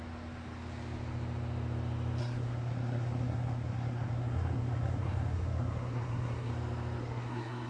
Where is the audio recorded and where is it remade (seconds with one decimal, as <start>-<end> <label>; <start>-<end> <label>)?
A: 0.0-2.2 recorded; 2.2-6.5 remade; 6.5-7.0 recorded; 7.0-7.7 remade